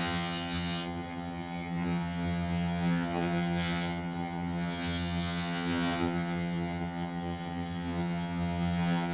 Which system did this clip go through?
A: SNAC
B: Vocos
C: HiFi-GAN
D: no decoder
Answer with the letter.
C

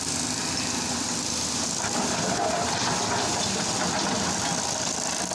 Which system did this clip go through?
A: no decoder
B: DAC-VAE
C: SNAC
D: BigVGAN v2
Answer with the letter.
A